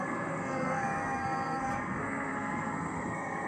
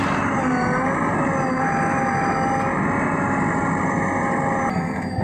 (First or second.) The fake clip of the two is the first